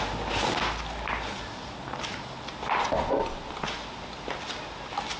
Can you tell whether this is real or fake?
real